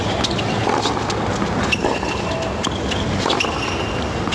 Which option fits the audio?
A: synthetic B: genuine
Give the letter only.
B